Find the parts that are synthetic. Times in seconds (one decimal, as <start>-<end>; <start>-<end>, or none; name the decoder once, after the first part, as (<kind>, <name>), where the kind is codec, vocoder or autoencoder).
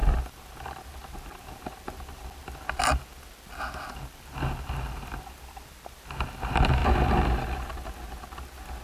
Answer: none